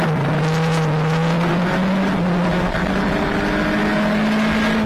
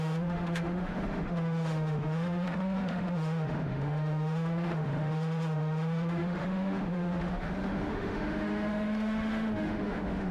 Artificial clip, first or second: second